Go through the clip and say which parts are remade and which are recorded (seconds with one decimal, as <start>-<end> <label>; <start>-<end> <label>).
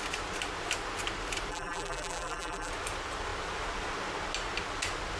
0.0-1.5 recorded; 1.5-2.7 remade; 2.7-5.2 recorded